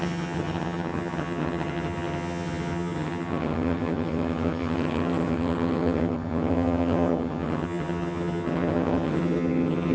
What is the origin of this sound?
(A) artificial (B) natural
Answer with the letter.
A